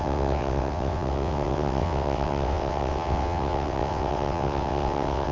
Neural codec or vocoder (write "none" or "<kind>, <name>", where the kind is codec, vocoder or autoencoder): vocoder, WaveNeXt